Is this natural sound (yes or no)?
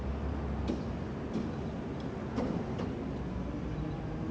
yes